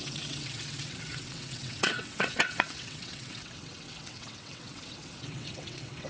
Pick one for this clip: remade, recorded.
remade